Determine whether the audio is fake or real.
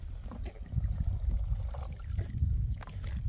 real